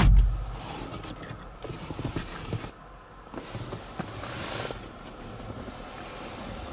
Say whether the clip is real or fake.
real